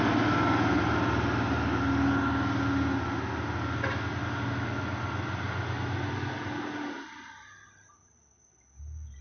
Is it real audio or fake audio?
real